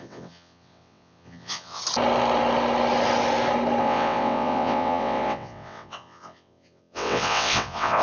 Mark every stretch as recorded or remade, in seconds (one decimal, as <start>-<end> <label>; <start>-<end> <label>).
0.0-1.8 remade; 1.8-3.8 recorded; 3.8-8.0 remade

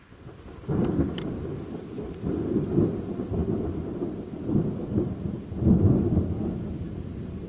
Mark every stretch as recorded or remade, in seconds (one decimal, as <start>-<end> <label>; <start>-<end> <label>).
0.0-0.8 recorded; 0.8-2.3 remade; 2.3-3.4 recorded; 3.4-4.4 remade; 4.4-7.5 recorded

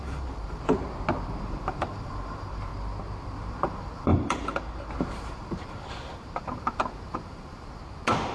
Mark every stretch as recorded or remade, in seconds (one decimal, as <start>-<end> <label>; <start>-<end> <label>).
0.0-0.8 remade; 0.8-1.4 recorded; 1.4-2.7 remade; 2.7-3.4 recorded; 3.4-7.8 remade; 7.8-8.3 recorded

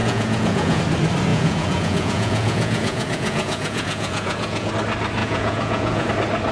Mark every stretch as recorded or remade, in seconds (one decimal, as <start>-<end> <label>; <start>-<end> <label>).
0.0-0.8 remade; 0.8-1.3 recorded; 1.3-4.7 remade; 4.7-5.2 recorded; 5.2-6.1 remade; 6.1-6.5 recorded

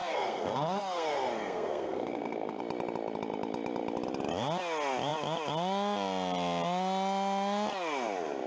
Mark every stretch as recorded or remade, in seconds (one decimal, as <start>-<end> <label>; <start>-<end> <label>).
0.0-2.6 remade; 2.6-8.5 recorded

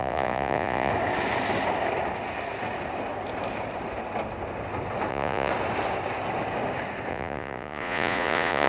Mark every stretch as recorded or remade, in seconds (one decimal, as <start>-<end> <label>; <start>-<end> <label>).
0.0-0.9 remade; 0.9-5.1 recorded; 5.1-5.5 remade; 5.5-7.1 recorded; 7.1-8.7 remade

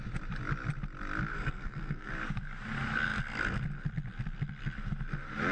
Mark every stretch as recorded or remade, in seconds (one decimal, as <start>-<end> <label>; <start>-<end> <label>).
0.0-1.3 recorded; 1.3-2.1 remade; 2.1-5.5 recorded